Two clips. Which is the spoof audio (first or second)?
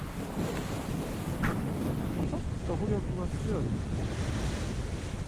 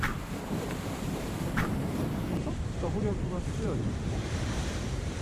second